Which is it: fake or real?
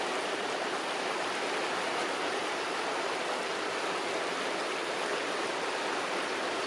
real